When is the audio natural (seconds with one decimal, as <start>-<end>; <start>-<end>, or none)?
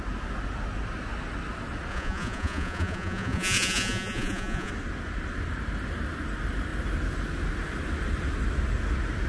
0.0-1.9; 4.7-9.3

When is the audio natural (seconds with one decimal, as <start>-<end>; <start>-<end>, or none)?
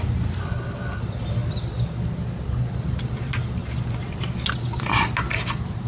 0.0-0.4; 1.0-5.9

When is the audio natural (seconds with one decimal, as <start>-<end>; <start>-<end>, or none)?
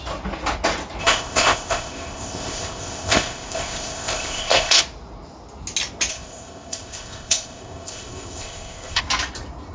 0.0-1.0; 4.8-6.1; 9.0-9.7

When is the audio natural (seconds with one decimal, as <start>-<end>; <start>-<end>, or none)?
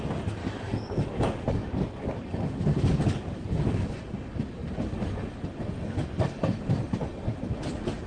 0.0-0.4; 3.9-8.1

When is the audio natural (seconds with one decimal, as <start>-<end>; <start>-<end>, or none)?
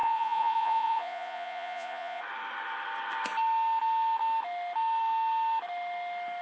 2.2-6.4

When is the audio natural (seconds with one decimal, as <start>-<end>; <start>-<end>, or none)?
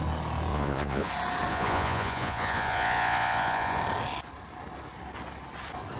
0.0-0.5; 1.1-1.5; 3.8-6.0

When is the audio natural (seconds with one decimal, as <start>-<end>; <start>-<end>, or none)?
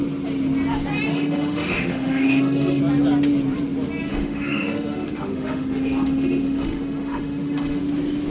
0.0-1.1; 2.8-4.1; 7.8-8.3